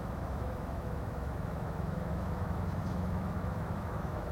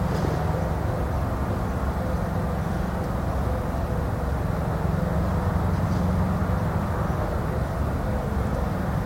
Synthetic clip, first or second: first